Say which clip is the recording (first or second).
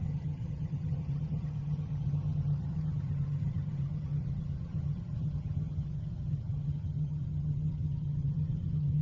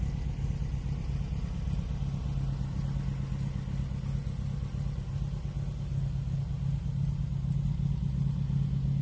second